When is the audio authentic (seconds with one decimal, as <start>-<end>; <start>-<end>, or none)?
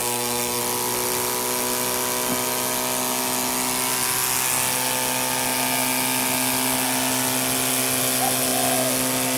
0.6-9.4